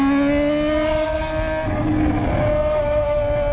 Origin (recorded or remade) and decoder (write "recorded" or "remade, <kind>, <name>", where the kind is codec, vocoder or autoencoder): recorded